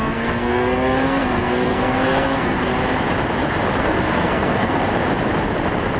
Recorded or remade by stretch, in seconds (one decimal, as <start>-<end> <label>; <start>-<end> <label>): 0.0-2.7 remade; 2.7-3.8 recorded; 3.8-4.9 remade; 4.9-6.0 recorded